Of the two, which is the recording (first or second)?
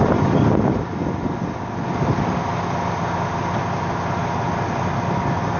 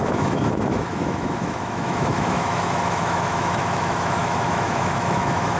first